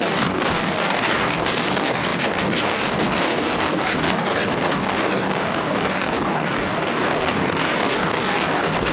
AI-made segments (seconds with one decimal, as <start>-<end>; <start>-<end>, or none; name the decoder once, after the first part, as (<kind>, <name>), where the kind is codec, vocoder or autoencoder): 0.0-8.9 (codec, DAC)